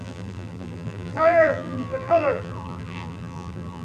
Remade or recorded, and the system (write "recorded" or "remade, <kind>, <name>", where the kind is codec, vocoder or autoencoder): remade, vocoder, BigVGAN v2